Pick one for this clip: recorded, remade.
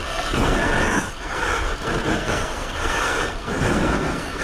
remade